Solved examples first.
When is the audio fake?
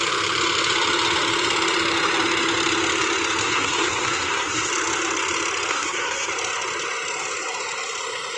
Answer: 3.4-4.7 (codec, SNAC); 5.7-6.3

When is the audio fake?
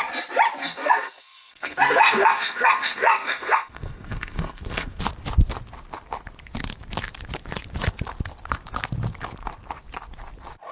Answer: 0.6-5.0 (codec, SNAC)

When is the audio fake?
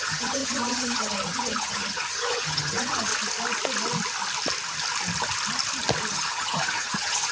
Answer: 0.0-3.1 (vocoder, HiFi-GAN); 6.1-7.3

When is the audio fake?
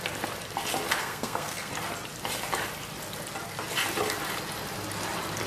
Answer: 1.0-1.7 (codec, SNAC)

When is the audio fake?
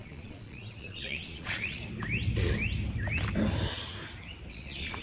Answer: 0.0-1.8 (vocoder, Vocos); 4.5-5.0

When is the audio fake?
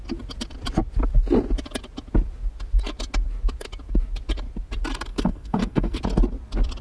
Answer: 5.1-6.0 (codec, SNAC)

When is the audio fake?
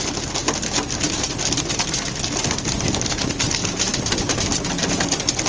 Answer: none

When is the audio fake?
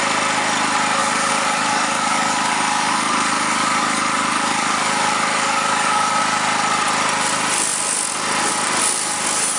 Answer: 1.0-6.2 (codec, DAC)